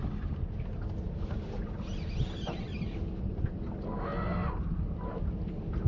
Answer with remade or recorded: recorded